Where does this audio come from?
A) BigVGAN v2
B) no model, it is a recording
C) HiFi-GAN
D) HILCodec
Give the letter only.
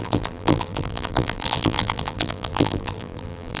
A